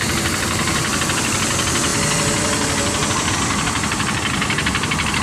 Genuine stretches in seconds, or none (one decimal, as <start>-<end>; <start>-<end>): 1.9-3.3